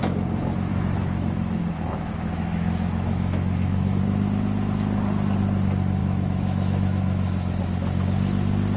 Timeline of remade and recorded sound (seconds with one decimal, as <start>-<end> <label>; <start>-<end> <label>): 0.0-0.7 recorded; 0.7-4.0 remade; 4.0-6.0 recorded; 6.0-7.6 remade; 7.6-8.8 recorded